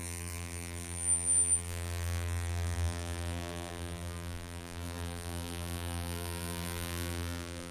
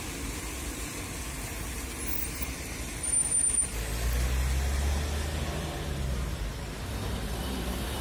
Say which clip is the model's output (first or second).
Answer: first